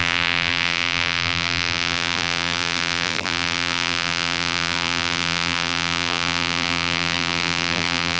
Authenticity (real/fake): fake